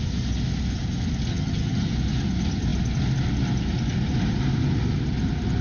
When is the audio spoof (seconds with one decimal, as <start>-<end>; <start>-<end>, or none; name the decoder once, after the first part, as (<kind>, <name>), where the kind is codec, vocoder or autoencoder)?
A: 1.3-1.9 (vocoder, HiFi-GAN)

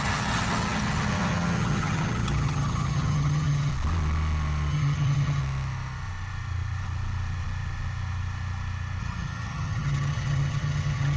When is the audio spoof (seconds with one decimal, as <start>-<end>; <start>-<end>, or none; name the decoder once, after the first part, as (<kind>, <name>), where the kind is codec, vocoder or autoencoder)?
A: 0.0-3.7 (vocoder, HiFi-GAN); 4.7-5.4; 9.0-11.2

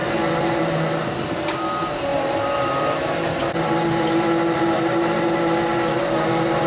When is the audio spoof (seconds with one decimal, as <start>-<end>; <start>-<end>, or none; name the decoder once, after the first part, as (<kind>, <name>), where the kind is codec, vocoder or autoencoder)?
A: none